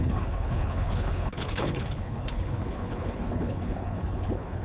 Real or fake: fake